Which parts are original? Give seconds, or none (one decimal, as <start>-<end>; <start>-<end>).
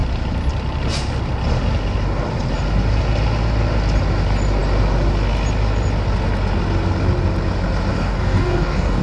0.0-7.9